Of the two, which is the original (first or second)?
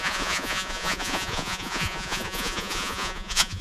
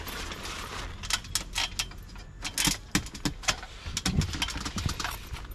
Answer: second